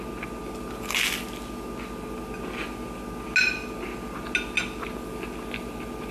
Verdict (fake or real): real